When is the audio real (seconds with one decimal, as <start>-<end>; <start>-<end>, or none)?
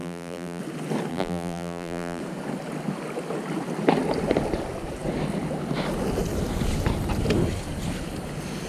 0.6-1.1; 2.2-8.7